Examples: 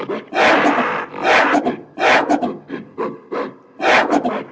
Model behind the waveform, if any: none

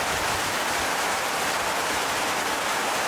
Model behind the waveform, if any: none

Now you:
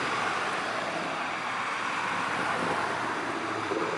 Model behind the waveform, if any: vocoder, BigVGAN v2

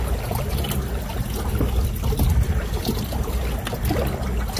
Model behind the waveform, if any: none